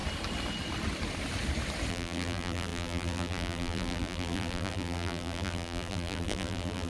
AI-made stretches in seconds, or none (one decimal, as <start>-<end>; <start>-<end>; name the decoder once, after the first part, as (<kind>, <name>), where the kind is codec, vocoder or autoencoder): 1.9-6.9 (vocoder, BigVGAN v2)